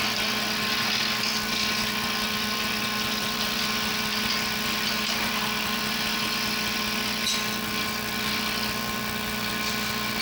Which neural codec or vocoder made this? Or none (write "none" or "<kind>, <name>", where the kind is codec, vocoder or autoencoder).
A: none